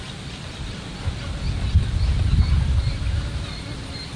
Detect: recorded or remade recorded